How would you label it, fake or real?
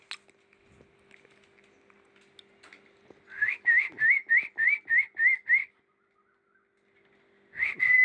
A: real